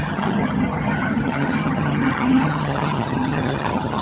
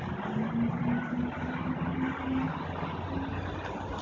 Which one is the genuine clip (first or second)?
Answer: second